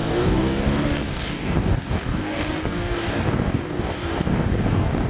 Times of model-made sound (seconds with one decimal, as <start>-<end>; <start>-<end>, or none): 0.0-5.1